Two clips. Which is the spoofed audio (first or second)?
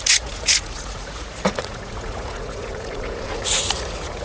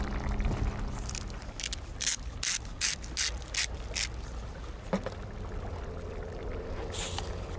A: first